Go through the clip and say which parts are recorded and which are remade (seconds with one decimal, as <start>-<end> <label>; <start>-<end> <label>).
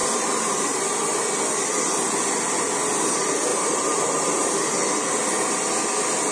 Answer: 0.0-0.8 remade; 0.8-3.5 recorded; 3.5-4.5 remade; 4.5-6.3 recorded